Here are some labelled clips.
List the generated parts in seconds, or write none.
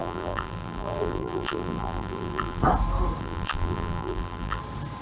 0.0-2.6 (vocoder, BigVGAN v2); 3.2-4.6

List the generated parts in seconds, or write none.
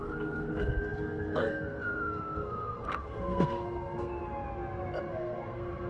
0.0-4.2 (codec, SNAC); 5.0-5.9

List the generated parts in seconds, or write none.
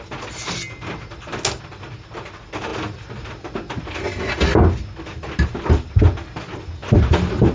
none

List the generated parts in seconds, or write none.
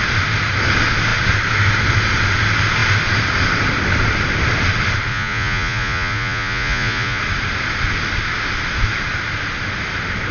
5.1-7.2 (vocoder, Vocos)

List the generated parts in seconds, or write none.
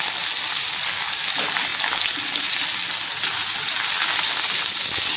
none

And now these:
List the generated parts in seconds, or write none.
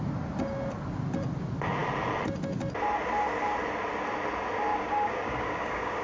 4.7-6.0 (codec, DAC)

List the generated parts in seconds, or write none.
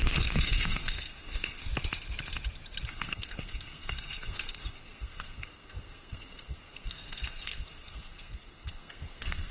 0.0-1.6 (codec, SNAC); 2.9-9.5